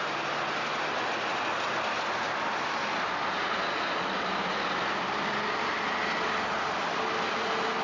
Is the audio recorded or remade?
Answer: recorded